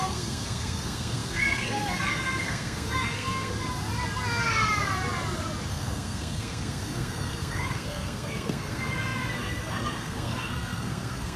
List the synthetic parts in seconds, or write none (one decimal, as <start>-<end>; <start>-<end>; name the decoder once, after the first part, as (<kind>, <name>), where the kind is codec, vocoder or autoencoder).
0.0-3.5 (codec, SNAC); 5.7-11.4